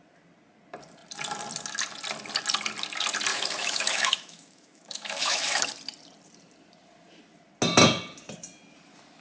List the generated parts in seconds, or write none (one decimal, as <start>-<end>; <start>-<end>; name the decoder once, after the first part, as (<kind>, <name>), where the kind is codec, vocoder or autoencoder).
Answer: 3.3-5.6 (autoencoder, DAC-VAE)